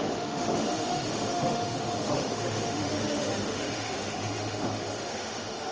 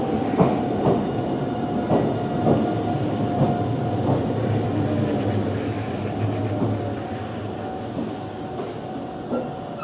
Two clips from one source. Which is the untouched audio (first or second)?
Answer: second